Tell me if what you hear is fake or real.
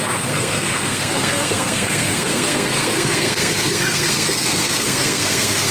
fake